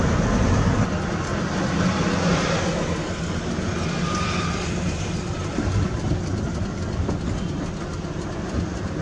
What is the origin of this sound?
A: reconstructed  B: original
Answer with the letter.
B